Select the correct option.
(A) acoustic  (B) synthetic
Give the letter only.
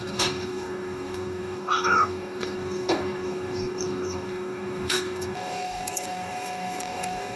B